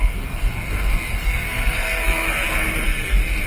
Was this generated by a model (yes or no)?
yes